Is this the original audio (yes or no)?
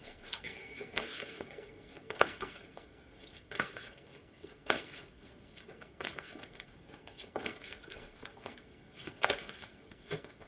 no